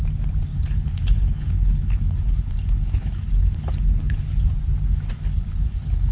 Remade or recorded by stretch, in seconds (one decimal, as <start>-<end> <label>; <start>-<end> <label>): 0.0-0.5 recorded; 0.5-4.2 remade; 4.2-5.1 recorded; 5.1-6.1 remade